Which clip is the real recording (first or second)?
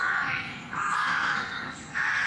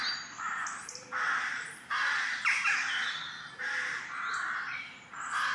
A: second